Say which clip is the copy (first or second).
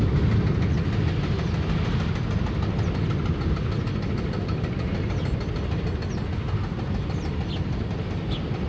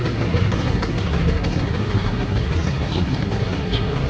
second